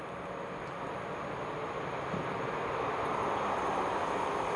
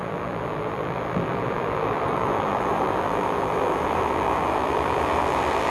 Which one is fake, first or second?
second